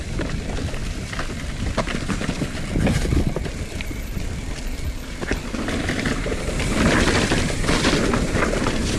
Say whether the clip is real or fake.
fake